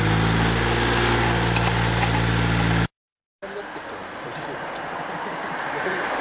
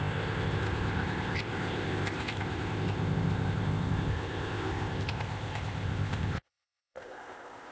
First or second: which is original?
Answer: first